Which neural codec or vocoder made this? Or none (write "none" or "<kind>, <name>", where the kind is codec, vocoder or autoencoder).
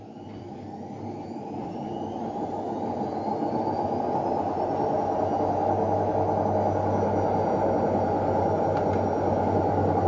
none